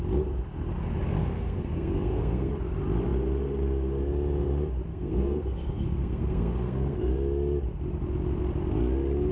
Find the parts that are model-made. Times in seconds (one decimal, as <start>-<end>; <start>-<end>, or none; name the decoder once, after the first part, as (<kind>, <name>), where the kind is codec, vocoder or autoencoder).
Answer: 1.2-2.5 (codec, SNAC); 4.9-7.1